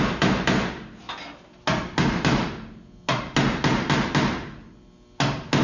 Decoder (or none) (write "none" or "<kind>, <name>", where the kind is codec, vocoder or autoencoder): none